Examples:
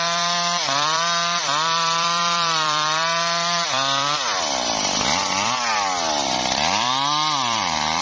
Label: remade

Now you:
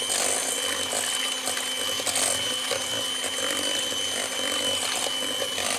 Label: recorded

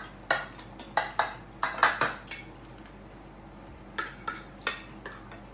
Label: recorded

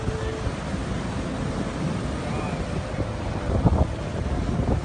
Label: recorded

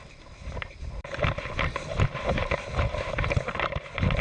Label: recorded